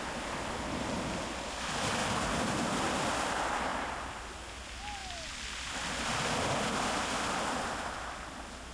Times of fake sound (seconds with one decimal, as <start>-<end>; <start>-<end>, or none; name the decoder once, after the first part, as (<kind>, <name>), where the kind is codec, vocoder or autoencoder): 2.0-2.6 (vocoder, BigVGAN v2); 3.7-4.2; 5.0-5.7